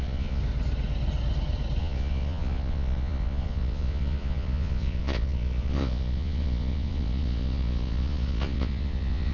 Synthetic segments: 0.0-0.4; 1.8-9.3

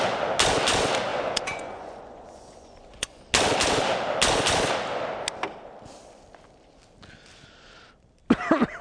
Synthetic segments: 1.1-3.2

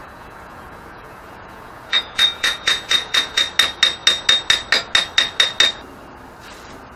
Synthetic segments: 0.0-3.4

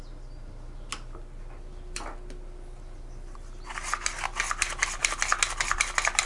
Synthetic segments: none

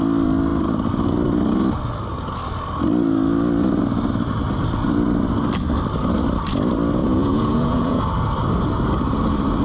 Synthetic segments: 7.0-8.0

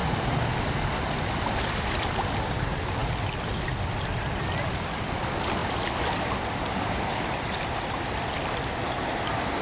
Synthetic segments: none

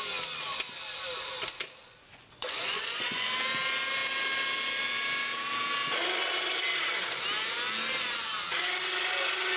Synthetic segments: 1.8-3.3